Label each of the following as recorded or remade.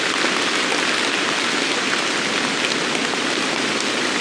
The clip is recorded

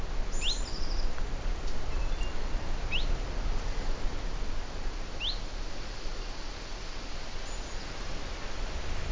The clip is recorded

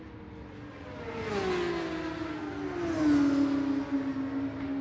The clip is recorded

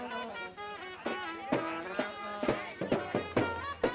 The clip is recorded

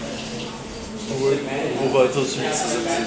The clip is recorded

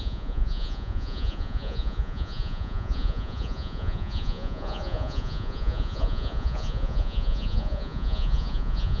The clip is remade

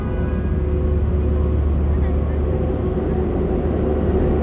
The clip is recorded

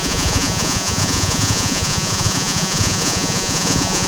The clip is remade